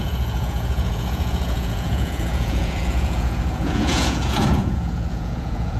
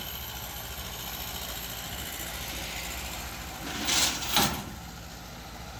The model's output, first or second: first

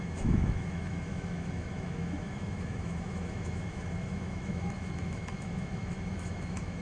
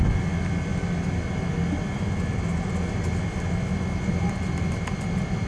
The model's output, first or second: first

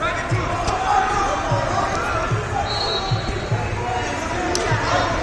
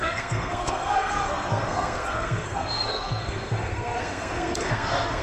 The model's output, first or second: second